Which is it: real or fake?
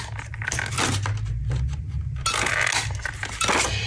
real